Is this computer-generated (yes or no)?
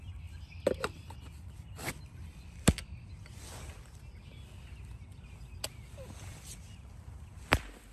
no